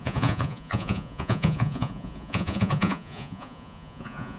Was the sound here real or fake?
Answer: fake